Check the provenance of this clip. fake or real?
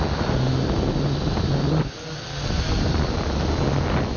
real